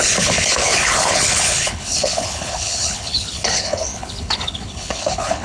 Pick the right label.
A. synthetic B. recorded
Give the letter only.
A